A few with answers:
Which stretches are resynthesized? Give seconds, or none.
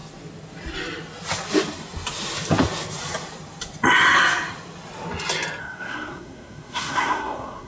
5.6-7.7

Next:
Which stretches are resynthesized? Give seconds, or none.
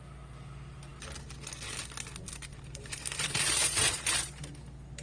2.5-4.5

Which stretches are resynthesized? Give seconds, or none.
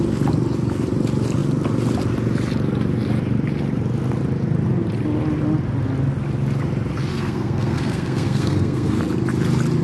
7.1-9.0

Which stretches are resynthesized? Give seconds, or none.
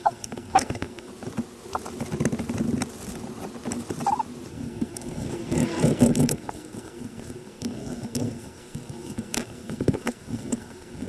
0.0-1.1; 4.5-11.1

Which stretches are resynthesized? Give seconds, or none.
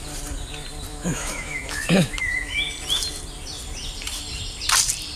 0.9-2.7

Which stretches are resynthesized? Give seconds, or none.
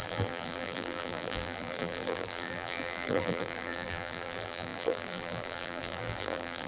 0.0-6.7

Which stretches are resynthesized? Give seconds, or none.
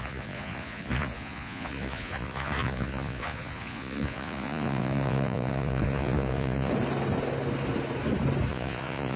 0.0-6.7; 8.5-9.2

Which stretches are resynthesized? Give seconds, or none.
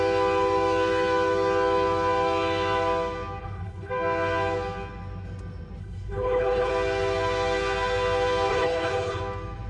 3.4-3.9; 5.8-6.7; 8.5-9.2